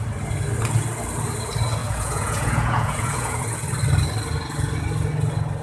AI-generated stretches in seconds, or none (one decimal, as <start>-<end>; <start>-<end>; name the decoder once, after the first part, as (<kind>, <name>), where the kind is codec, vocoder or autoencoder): 1.8-3.4 (vocoder, Vocos)